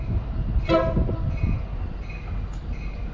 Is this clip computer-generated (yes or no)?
no